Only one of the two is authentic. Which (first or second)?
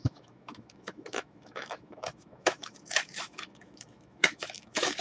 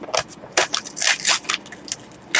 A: second